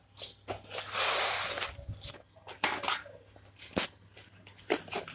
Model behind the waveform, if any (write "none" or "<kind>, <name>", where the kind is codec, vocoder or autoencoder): none